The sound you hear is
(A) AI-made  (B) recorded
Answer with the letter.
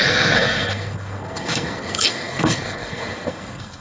A